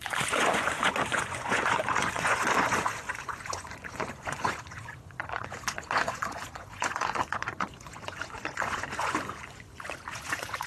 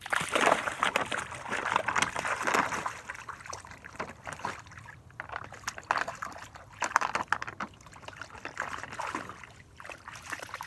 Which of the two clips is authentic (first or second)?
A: second